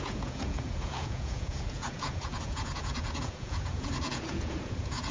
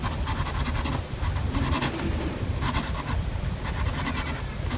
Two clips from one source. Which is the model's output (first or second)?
first